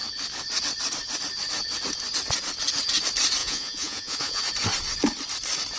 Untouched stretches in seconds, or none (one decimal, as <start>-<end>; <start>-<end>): 0.0-3.4; 4.4-5.8